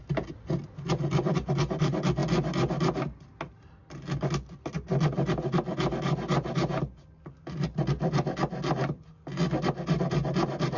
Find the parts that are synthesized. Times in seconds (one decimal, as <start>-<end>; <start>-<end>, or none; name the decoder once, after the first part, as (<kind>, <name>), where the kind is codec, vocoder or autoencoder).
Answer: none